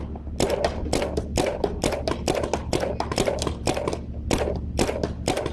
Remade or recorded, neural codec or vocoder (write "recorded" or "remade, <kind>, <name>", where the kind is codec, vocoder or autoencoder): recorded